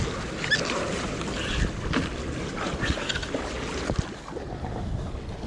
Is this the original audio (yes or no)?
yes